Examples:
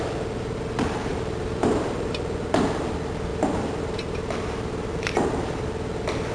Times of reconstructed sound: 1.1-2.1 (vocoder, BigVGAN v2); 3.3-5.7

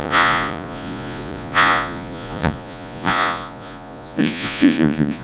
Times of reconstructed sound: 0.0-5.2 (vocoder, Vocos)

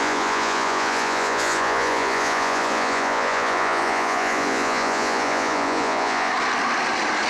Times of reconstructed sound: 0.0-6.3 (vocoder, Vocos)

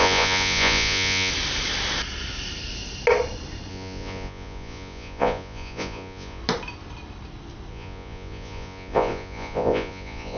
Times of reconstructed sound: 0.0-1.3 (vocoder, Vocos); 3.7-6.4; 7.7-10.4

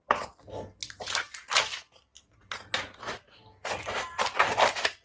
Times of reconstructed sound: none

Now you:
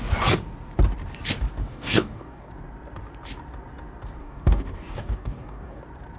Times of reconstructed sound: 1.6-2.5 (codec, DAC); 4.2-5.8

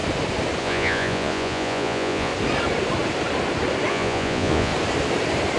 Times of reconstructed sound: 0.6-2.3 (vocoder, Vocos); 3.9-4.7